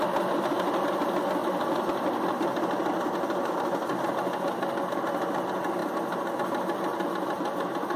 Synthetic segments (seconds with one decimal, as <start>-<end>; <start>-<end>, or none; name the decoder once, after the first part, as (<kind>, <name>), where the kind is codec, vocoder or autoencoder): none